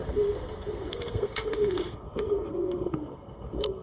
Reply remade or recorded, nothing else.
remade